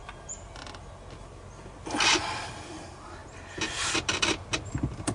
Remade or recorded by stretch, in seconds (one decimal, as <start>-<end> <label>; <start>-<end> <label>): 0.0-5.1 recorded